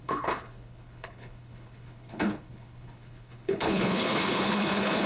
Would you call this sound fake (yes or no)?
yes